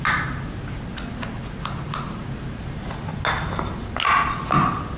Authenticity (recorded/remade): recorded